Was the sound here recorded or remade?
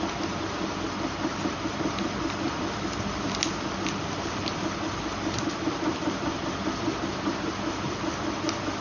recorded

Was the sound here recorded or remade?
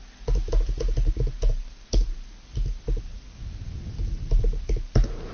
recorded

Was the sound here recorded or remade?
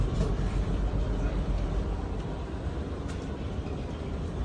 remade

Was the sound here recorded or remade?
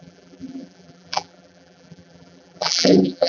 remade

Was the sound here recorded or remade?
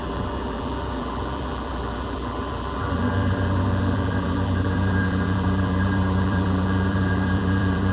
remade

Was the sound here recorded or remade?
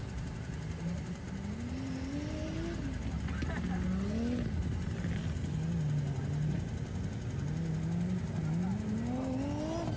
recorded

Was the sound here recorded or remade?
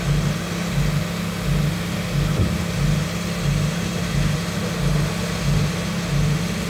recorded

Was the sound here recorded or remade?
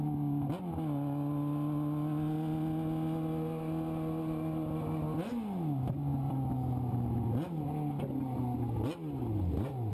recorded